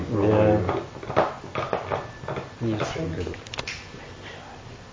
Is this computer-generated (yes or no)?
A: no